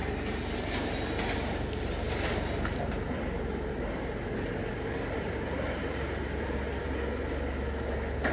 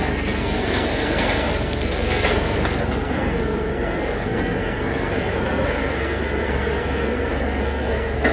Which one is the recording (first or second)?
first